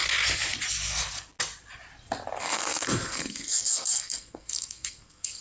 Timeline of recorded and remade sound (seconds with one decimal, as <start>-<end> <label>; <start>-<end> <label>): 0.0-2.4 recorded; 2.4-5.4 remade